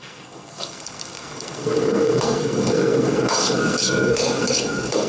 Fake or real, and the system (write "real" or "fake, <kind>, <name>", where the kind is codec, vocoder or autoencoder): fake, codec, SNAC